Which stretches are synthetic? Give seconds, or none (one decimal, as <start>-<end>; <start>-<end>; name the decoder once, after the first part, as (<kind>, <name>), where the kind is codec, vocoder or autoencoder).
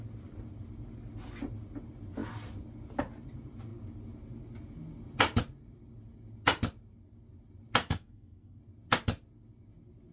7.8-8.6 (codec, SNAC)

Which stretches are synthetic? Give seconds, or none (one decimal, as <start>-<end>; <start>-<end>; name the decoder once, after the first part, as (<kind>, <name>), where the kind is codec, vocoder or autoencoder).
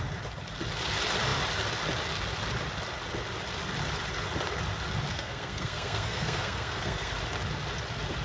5.1-7.1 (codec, SNAC)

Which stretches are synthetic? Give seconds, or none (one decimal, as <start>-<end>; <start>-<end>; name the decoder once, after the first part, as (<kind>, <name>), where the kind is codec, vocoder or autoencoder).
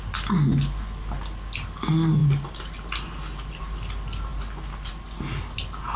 none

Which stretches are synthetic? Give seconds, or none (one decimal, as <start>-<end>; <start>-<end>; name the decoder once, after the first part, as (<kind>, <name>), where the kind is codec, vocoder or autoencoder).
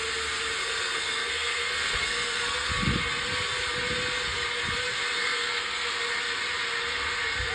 0.6-2.7 (codec, SNAC); 5.2-5.9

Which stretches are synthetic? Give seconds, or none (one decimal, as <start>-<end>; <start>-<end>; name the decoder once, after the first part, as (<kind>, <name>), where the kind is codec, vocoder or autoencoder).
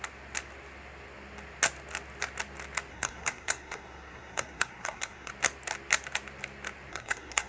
2.9-5.3 (codec, SNAC); 6.9-7.5